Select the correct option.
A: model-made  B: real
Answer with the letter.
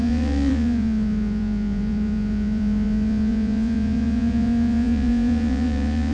A